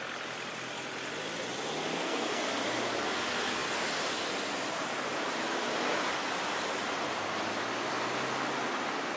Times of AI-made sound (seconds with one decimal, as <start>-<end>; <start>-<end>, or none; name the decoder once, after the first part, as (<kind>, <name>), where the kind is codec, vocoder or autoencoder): 1.9-2.5 (codec, SNAC)